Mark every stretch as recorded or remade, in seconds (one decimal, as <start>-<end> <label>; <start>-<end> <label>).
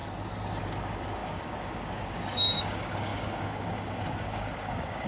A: 0.0-0.6 recorded; 0.6-5.1 remade